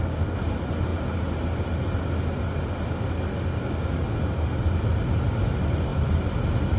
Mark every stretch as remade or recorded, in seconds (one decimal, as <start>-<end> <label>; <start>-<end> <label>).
0.0-3.3 recorded; 3.3-4.0 remade; 4.0-6.8 recorded

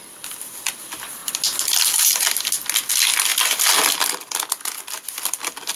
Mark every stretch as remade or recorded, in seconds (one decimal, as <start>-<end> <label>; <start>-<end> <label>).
0.0-5.8 recorded

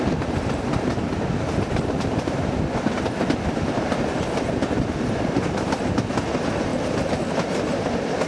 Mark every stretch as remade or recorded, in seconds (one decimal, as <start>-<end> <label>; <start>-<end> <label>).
0.0-6.7 recorded; 6.7-7.6 remade; 7.6-8.3 recorded

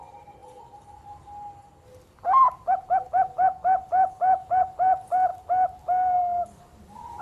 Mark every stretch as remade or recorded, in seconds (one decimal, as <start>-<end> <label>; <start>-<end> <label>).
0.0-7.2 recorded

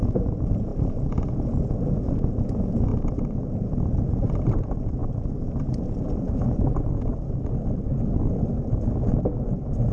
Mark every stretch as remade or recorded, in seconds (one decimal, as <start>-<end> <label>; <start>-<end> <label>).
0.0-5.0 remade; 5.0-5.8 recorded; 5.8-7.1 remade; 7.1-9.9 recorded

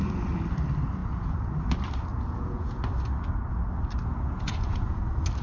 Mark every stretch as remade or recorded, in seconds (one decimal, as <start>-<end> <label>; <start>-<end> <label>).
0.0-1.0 recorded; 1.0-1.6 remade; 1.6-2.1 recorded; 2.1-2.8 remade; 2.8-4.1 recorded; 4.1-5.0 remade; 5.0-5.4 recorded

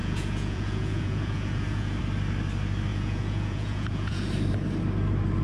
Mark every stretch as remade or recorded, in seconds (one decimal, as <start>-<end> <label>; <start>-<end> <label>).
0.0-2.0 remade; 2.0-2.9 recorded; 2.9-4.3 remade; 4.3-5.4 recorded

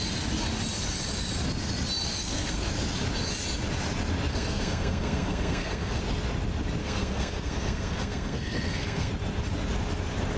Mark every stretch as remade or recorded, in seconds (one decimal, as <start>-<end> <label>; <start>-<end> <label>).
0.0-2.2 recorded; 2.2-2.7 remade; 2.7-4.3 recorded; 4.3-6.0 remade; 6.0-6.8 recorded; 6.8-9.1 remade; 9.1-10.4 recorded